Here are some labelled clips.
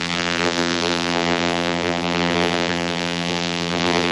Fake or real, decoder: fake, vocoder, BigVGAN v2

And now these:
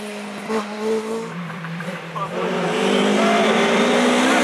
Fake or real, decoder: fake, vocoder, BigVGAN v2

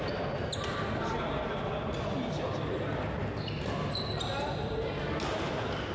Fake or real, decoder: real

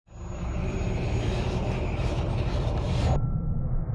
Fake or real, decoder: real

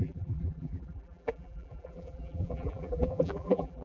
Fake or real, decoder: fake, vocoder, BigVGAN v2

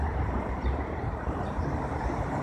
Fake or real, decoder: fake, vocoder, BigVGAN v2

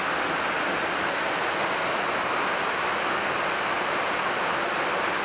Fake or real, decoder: real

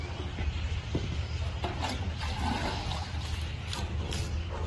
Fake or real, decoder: fake, vocoder, BigVGAN v2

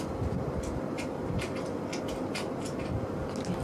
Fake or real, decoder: real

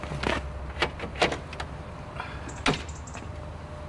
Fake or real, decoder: real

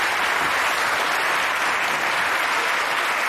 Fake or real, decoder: real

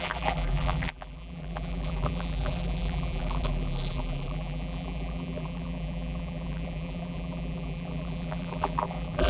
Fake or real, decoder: fake, vocoder, BigVGAN v2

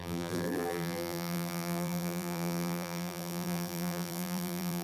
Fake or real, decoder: fake, vocoder, BigVGAN v2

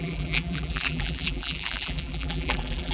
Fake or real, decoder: fake, vocoder, BigVGAN v2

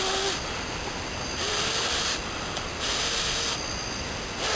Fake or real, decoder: real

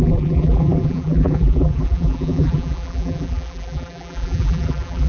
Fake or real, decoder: fake, vocoder, BigVGAN v2